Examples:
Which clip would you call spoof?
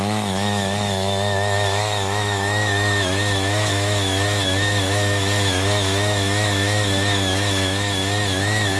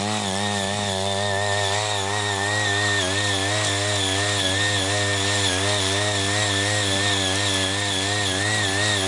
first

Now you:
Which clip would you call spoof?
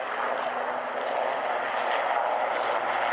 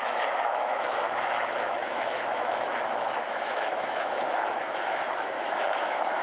second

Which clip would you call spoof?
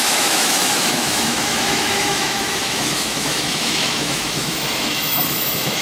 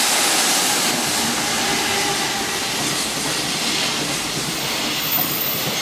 first